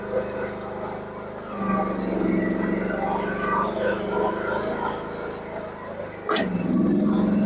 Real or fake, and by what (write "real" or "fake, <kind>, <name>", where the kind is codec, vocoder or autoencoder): real